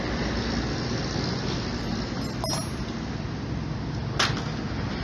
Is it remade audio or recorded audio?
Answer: recorded